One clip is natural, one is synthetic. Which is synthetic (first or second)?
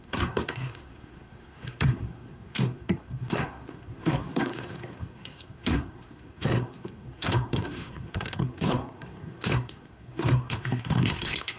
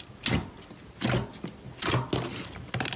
first